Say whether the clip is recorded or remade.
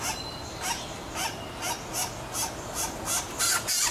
recorded